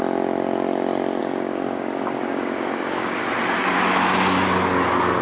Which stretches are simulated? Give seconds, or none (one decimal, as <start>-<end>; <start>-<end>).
1.2-3.2